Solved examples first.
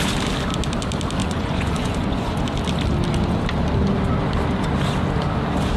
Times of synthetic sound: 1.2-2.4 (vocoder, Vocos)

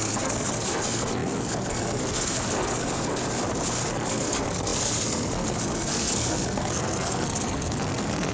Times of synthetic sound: 0.0-3.2 (codec, SNAC); 3.9-8.3

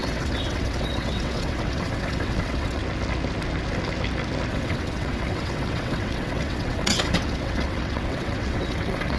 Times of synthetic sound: 0.0-2.8 (vocoder, WaveNeXt); 4.5-9.2

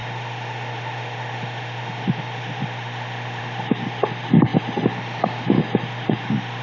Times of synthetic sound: 0.0-6.6 (autoencoder, DAC-VAE)

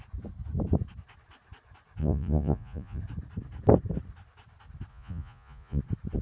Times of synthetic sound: 2.0-3.0 (vocoder, Vocos); 4.9-5.8

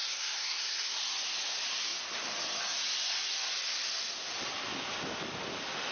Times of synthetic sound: 0.0-1.0 (codec, SNAC)

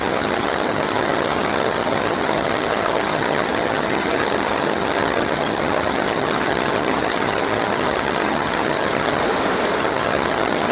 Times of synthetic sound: 0.0-9.2 (vocoder, HiFi-GAN); 9.8-10.7

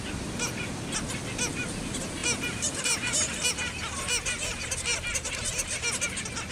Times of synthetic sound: 2.2-3.5 (vocoder, BigVGAN v2)